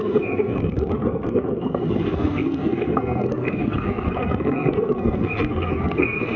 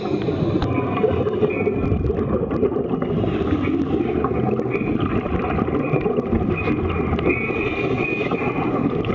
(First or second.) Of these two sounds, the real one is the second